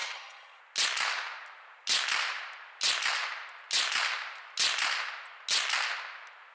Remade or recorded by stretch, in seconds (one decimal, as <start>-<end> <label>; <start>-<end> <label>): 0.0-0.6 remade; 0.6-6.5 recorded